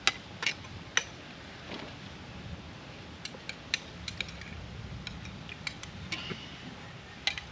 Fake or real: real